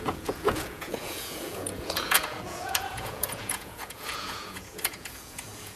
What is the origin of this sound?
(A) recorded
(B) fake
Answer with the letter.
B